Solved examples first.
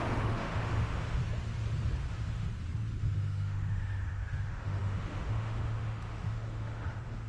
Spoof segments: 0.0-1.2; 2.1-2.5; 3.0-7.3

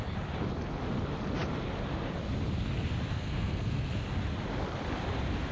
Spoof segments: 3.1-3.9

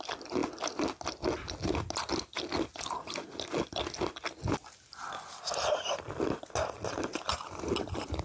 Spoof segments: none

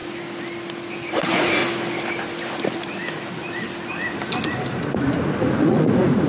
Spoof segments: 1.1-1.6; 5.4-6.3

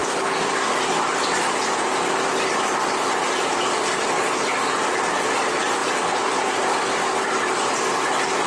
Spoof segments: 0.0-3.5; 5.8-7.7

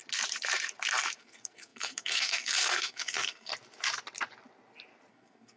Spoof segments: 1.2-3.5; 5.1-5.6

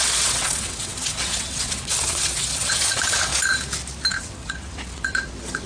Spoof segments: 0.0-3.3; 4.1-5.7